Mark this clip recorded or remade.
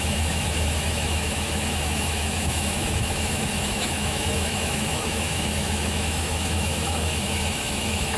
remade